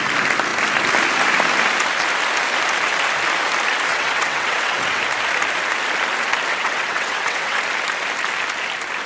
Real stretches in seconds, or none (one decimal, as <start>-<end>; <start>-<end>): 0.0-3.9; 5.0-6.5; 7.6-9.1